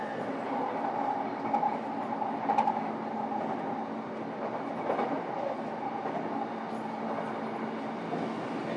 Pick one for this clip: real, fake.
real